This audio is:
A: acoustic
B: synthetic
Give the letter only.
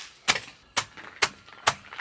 A